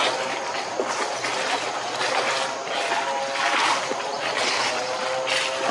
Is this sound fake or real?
real